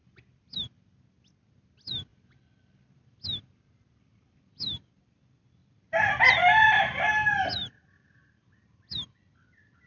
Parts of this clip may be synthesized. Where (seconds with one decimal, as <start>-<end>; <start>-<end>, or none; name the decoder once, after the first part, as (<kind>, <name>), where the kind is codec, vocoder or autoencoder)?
none